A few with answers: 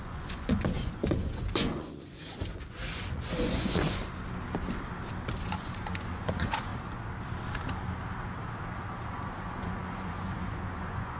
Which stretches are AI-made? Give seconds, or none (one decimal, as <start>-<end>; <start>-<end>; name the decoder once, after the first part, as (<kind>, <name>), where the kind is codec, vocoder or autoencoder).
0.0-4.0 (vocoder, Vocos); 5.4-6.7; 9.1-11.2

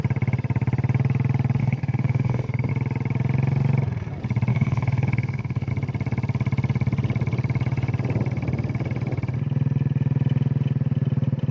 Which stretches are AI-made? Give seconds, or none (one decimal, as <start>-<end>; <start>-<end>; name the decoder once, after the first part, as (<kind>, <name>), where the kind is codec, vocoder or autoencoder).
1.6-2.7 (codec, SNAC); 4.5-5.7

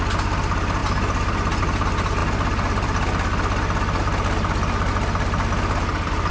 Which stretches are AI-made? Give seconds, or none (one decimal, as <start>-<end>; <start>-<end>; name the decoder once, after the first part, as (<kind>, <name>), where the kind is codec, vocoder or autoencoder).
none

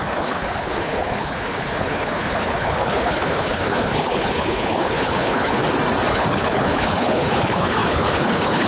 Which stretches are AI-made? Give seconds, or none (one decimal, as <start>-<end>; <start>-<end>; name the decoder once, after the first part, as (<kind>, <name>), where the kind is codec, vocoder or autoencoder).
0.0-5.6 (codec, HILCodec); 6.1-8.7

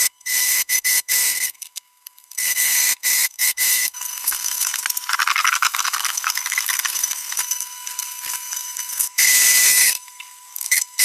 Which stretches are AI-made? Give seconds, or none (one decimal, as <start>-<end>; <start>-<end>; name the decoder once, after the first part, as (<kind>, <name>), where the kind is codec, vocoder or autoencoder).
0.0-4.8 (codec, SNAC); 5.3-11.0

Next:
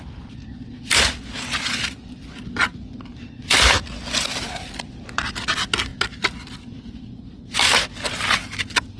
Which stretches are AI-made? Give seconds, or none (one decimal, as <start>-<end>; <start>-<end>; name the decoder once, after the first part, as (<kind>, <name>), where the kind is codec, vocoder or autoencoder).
none

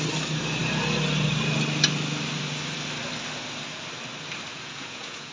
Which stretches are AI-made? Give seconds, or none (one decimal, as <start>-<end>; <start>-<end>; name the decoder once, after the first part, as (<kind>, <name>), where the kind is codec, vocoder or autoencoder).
4.5-5.3 (vocoder, Vocos)